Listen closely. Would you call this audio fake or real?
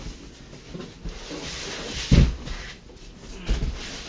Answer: real